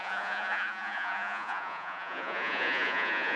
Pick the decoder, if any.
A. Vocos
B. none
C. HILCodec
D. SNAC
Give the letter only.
A